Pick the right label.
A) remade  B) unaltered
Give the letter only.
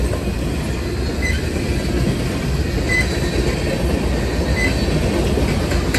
B